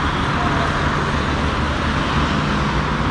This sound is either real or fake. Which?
real